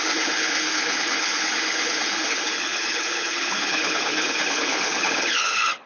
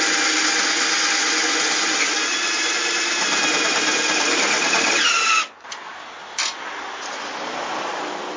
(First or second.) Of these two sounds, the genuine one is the second